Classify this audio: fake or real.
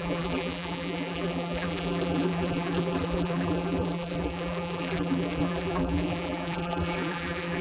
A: fake